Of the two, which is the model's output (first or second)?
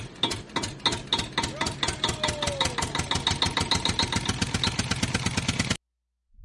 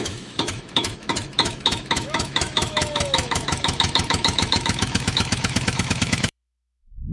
second